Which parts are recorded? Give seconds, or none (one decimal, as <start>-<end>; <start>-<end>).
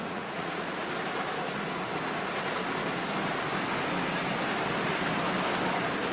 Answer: 0.9-6.1